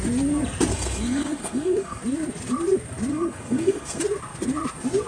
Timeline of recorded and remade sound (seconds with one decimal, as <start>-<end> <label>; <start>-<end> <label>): 0.0-0.7 recorded; 0.7-2.0 remade; 2.0-3.1 recorded; 3.1-4.0 remade; 4.0-5.1 recorded